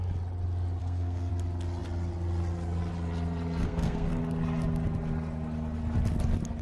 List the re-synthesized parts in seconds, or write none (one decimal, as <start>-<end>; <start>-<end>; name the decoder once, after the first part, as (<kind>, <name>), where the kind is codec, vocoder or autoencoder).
0.8-1.3 (codec, SNAC); 3.6-4.2